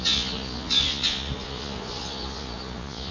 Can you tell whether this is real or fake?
fake